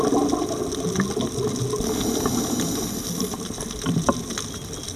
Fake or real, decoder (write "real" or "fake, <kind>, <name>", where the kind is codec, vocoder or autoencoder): real